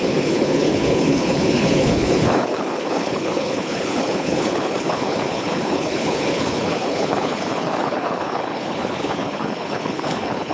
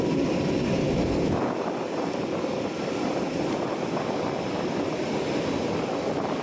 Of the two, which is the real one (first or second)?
second